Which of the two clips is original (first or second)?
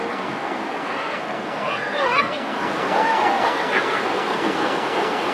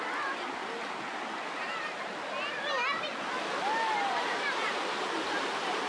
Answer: second